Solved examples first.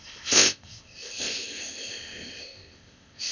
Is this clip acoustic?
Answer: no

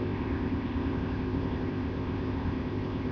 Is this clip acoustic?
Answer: no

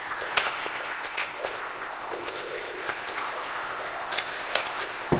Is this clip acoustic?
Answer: no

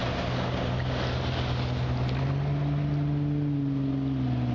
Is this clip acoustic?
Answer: yes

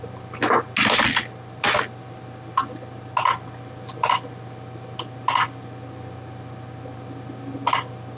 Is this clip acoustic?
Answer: yes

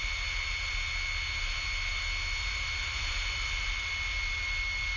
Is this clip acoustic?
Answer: yes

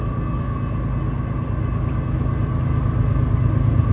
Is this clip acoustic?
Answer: yes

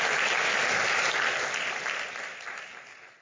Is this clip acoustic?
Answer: yes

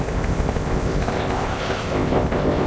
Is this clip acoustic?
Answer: no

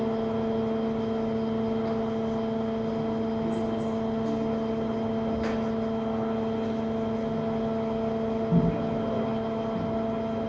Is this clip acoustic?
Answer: yes